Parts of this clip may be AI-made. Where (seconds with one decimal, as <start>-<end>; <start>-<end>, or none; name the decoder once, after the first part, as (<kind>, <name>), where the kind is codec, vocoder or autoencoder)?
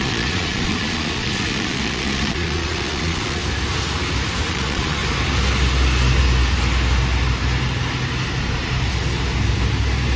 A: 0.0-3.4 (vocoder, Vocos); 4.5-5.0